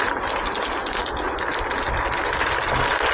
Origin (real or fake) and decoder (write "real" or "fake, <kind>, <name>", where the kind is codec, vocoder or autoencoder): real